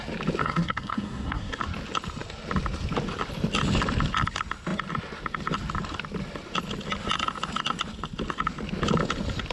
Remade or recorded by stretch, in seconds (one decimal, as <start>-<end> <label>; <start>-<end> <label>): 0.0-0.4 recorded; 0.4-1.6 remade; 1.6-9.5 recorded